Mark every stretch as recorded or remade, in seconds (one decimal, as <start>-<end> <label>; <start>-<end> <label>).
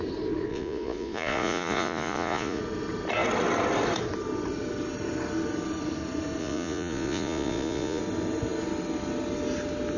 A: 0.0-0.5 recorded; 0.5-2.6 remade; 2.6-6.4 recorded; 6.4-8.0 remade; 8.0-10.0 recorded